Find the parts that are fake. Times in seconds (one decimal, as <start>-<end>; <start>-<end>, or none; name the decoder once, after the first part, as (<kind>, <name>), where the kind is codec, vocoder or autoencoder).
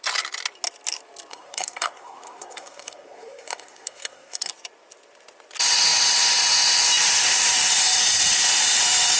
1.3-4.5 (codec, SNAC)